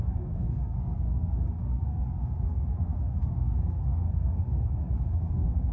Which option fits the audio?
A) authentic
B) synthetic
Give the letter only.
B